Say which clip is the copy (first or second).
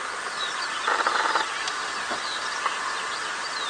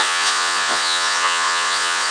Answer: second